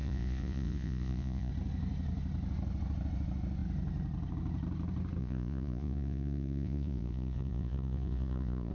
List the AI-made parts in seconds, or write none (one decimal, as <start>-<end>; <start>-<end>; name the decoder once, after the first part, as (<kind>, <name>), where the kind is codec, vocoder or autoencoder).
0.0-1.5 (vocoder, Vocos); 5.2-8.7